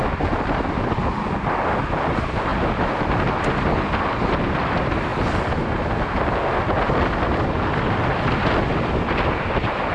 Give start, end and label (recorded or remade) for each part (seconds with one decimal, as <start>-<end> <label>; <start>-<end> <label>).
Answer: 0.0-9.9 recorded

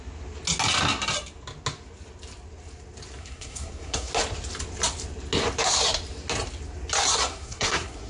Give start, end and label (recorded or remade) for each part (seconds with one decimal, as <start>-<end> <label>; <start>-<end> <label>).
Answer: 0.0-3.2 recorded; 3.2-4.1 remade; 4.1-7.3 recorded; 7.3-8.1 remade

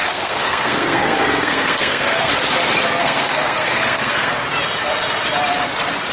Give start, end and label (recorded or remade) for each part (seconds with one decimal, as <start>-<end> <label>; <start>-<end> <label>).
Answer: 0.0-2.3 remade; 2.3-3.0 recorded; 3.0-4.3 remade; 4.3-6.1 recorded

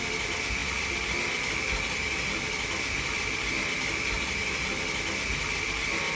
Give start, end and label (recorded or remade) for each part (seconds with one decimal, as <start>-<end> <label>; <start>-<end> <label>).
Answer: 0.0-6.2 recorded

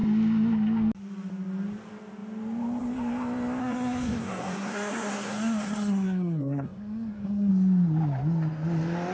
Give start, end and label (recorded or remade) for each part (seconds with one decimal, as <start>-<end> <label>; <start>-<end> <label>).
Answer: 0.0-3.6 recorded; 3.6-7.5 remade; 7.5-9.1 recorded

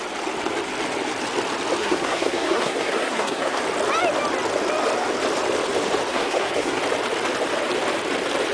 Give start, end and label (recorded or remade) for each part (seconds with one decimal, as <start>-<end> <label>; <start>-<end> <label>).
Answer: 0.0-1.8 recorded; 1.8-3.6 remade; 3.6-6.1 recorded; 6.1-6.8 remade; 6.8-8.5 recorded

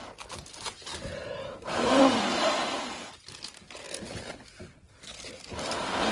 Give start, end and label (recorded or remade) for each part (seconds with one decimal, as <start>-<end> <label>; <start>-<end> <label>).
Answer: 0.0-6.1 recorded

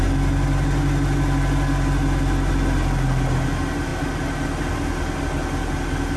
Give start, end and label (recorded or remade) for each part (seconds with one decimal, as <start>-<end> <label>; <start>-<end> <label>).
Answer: 0.0-6.2 recorded